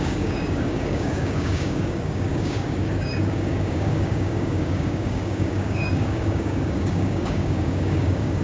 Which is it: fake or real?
fake